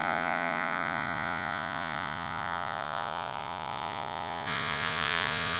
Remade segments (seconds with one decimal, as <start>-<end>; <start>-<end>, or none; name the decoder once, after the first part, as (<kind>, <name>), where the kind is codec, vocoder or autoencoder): 0.0-5.6 (vocoder, Vocos)